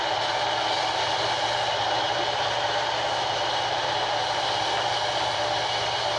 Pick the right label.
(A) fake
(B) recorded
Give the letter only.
B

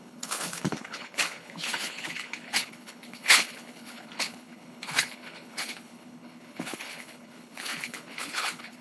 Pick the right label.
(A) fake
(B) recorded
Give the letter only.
A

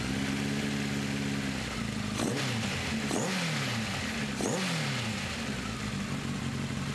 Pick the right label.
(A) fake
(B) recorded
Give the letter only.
B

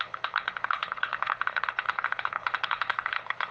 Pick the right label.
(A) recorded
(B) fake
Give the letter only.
B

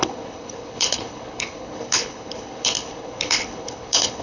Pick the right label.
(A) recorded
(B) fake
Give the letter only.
B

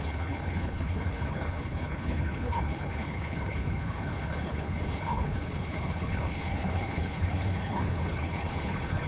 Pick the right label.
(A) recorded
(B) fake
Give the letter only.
B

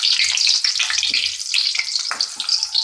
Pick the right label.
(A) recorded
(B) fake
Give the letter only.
A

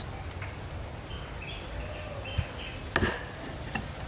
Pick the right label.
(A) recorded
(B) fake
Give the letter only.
A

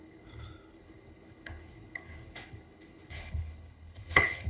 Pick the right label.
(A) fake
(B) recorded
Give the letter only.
A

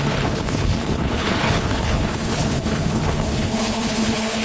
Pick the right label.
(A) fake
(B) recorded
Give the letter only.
A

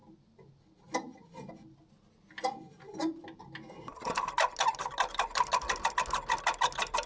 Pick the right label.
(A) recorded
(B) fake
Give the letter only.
A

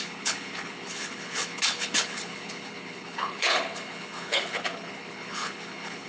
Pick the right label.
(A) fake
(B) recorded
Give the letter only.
A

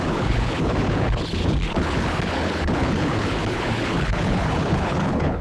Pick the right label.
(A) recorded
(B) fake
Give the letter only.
B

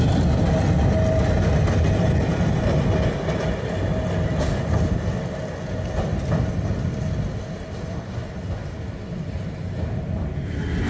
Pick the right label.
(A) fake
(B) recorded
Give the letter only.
B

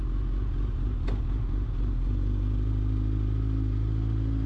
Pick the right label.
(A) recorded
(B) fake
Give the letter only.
A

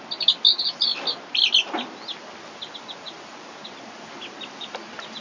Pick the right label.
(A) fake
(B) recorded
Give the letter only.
B